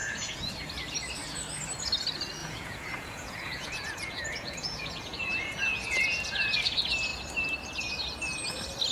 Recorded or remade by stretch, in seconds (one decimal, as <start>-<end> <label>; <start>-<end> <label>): 0.0-0.5 remade; 0.5-2.4 recorded; 2.4-6.0 remade; 6.0-8.9 recorded